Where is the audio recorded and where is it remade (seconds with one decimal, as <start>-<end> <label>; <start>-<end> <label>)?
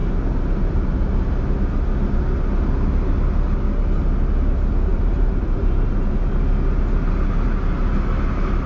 0.0-1.3 remade; 1.3-4.9 recorded; 4.9-6.3 remade; 6.3-8.7 recorded